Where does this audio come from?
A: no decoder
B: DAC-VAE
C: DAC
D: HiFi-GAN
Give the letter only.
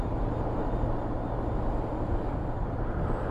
A